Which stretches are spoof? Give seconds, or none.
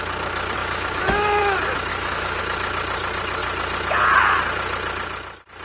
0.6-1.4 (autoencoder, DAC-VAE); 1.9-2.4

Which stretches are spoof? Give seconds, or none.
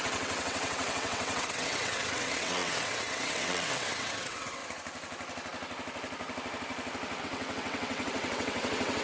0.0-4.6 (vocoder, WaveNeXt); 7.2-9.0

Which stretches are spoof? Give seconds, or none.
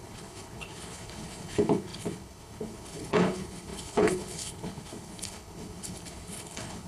0.0-6.9 (codec, HILCodec)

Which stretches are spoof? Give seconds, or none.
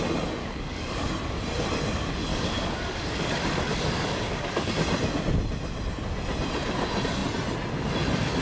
0.4-1.1 (codec, DAC); 2.3-4.7